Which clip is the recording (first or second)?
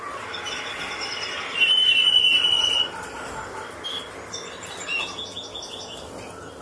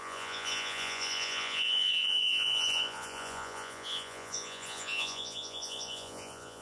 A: first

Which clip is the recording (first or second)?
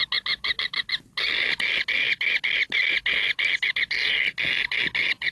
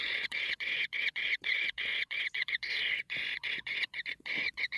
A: first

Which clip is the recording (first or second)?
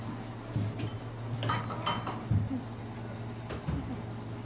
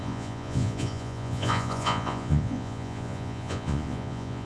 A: first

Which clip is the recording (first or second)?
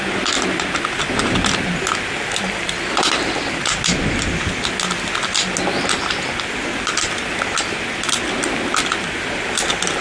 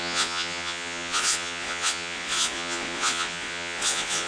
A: first